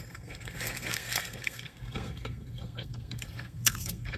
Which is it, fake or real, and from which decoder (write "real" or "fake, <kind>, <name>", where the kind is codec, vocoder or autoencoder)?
fake, codec, SNAC